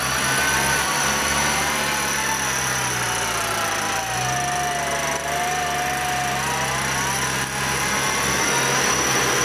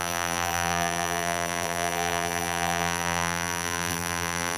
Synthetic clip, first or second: second